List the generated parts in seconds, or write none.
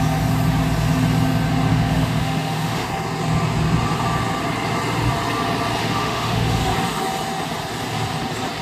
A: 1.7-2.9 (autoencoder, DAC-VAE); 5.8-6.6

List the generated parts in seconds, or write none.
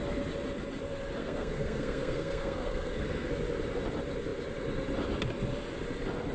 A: 1.2-3.3 (codec, SNAC)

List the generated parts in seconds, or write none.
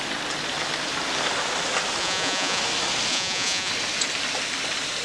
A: 2.0-2.6 (vocoder, Vocos); 3.1-3.7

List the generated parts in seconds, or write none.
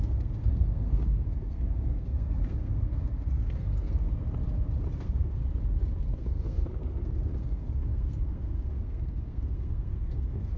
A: 0.0-4.1 (codec, SNAC); 5.0-5.4; 6.0-10.6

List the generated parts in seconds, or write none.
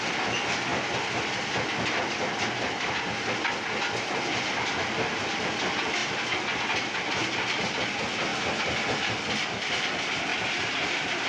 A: 0.7-1.4 (vocoder, BigVGAN v2); 8.3-9.1; 10.3-11.3